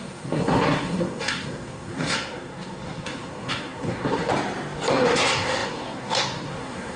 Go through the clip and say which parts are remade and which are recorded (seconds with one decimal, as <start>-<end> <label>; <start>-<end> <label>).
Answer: 0.0-4.3 remade; 4.3-4.9 recorded; 4.9-7.0 remade